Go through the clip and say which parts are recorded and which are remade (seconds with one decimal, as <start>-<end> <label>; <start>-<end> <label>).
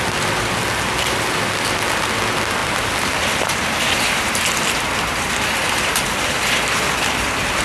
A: 0.0-7.6 recorded